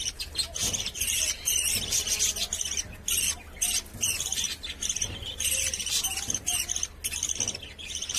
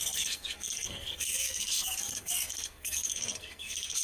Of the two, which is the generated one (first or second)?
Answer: second